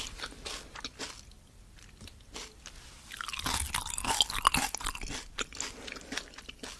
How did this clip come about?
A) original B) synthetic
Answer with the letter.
A